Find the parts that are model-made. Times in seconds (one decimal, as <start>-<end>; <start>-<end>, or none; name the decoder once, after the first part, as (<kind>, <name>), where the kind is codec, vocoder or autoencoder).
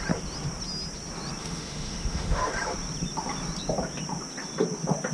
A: 1.4-2.5 (autoencoder, DAC-VAE)